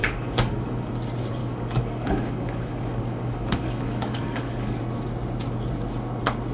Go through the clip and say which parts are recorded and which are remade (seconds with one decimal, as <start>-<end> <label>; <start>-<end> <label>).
0.0-0.9 remade; 0.9-1.4 recorded; 1.4-4.8 remade; 4.8-6.5 recorded